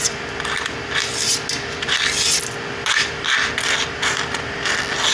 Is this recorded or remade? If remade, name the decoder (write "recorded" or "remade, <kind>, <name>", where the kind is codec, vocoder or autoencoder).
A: recorded